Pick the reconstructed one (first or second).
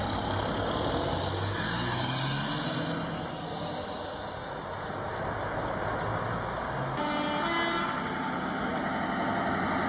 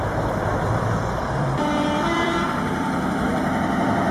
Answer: second